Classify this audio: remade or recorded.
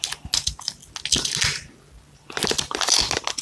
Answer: recorded